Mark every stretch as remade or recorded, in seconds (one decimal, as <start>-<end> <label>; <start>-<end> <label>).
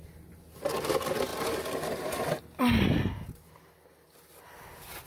0.0-5.1 recorded